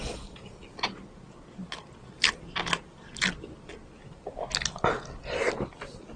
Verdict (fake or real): real